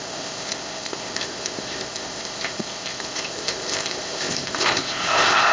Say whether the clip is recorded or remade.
remade